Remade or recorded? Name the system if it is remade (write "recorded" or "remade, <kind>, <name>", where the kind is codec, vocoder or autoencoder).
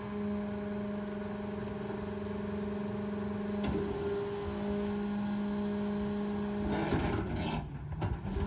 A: recorded